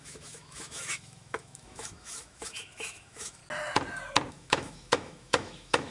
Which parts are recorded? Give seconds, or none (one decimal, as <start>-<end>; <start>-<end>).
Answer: 3.4-4.3